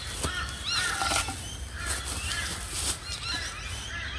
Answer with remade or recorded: recorded